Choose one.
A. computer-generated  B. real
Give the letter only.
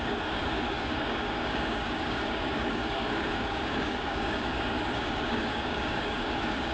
A